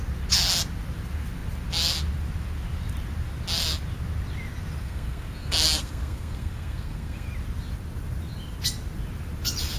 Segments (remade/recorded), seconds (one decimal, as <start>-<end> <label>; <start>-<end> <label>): 0.0-4.8 recorded; 4.8-7.3 remade; 7.3-9.8 recorded